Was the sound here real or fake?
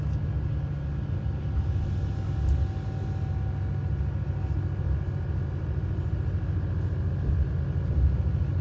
real